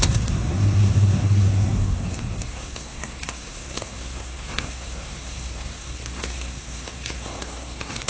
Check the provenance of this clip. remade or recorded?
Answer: remade